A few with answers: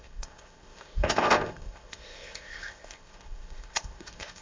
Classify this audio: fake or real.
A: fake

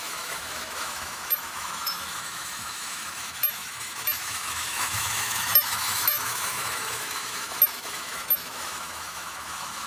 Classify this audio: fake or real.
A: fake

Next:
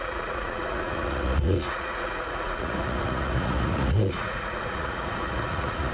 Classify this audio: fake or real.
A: fake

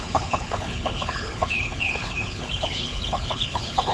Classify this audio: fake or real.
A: fake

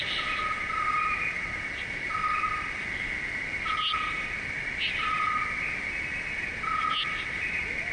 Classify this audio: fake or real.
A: real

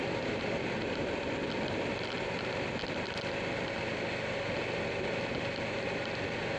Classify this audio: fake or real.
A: real